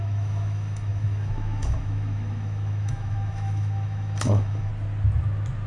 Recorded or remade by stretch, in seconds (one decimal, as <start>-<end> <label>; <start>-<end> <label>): 0.0-4.7 remade; 4.7-5.7 recorded